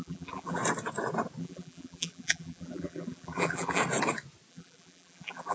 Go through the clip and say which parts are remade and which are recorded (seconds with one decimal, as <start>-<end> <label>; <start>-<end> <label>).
0.0-0.6 remade; 0.6-1.4 recorded; 1.4-3.8 remade; 3.8-4.5 recorded; 4.5-5.5 remade